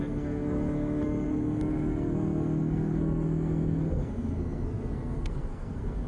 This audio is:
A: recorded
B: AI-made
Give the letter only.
B